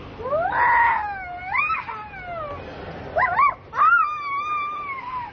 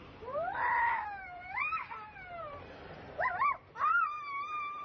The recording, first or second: first